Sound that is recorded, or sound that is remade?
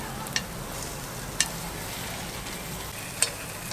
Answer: recorded